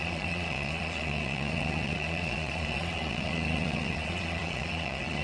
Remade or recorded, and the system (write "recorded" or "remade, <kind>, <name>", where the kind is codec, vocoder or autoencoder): remade, vocoder, Vocos